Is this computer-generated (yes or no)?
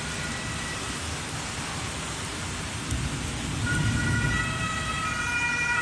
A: no